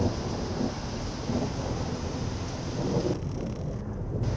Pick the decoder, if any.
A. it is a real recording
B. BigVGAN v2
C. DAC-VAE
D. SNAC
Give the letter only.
A